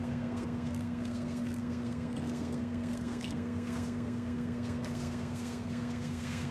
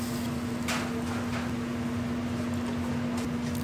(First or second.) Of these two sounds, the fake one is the first